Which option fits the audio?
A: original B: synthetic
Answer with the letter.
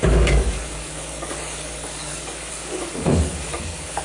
B